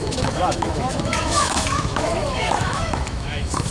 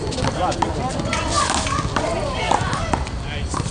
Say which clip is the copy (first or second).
first